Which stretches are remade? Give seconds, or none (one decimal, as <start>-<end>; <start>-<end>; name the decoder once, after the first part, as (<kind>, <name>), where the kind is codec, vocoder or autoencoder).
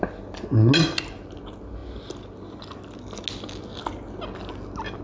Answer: none